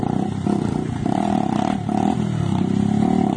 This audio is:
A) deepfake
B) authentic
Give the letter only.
B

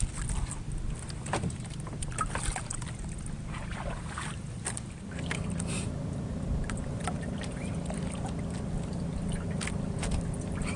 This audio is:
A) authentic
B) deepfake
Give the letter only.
A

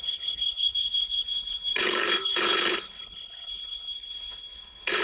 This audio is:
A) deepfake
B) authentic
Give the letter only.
A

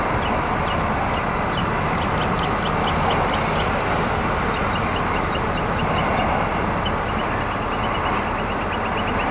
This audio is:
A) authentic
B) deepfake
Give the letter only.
A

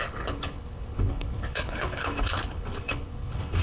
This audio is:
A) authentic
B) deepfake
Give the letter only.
B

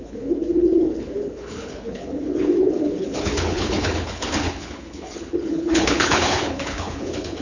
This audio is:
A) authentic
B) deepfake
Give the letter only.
B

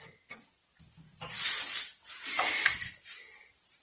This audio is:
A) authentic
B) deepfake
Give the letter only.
A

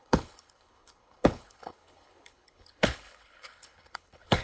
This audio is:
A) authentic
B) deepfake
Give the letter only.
B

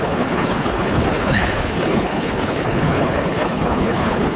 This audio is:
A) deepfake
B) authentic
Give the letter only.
A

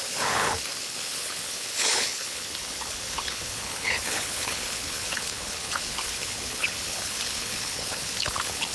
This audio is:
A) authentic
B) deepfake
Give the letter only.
B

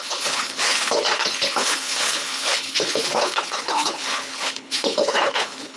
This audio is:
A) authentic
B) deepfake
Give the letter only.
B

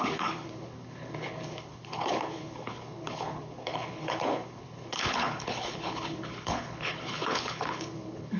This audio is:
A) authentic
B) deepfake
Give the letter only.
B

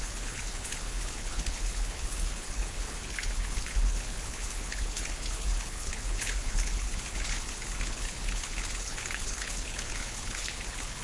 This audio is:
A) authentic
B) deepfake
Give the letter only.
B